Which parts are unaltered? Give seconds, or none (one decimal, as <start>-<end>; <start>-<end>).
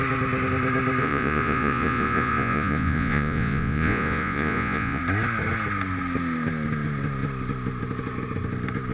0.0-1.0; 5.0-8.9